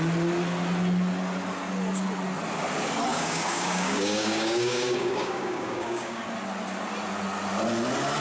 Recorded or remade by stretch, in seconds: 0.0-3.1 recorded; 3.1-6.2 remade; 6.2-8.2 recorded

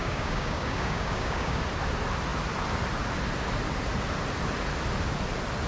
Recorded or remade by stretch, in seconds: 0.0-1.6 remade; 1.6-5.7 recorded

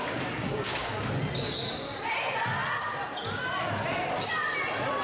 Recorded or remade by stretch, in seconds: 0.0-1.0 remade; 1.0-5.0 recorded

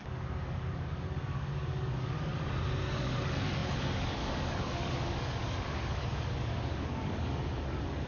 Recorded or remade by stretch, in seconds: 0.0-2.3 remade; 2.3-2.9 recorded; 2.9-8.1 remade

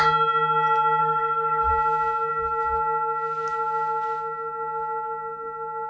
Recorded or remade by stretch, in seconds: 0.0-1.0 recorded; 1.0-1.7 remade; 1.7-5.9 recorded

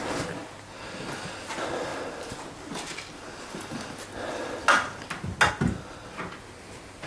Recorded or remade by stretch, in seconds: 0.0-7.1 recorded

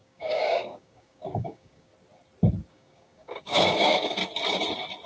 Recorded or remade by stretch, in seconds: 0.0-1.9 remade; 1.9-2.7 recorded; 2.7-4.2 remade; 4.2-5.1 recorded